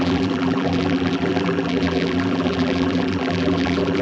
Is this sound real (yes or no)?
no